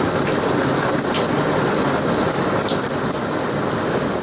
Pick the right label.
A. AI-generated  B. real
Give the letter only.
B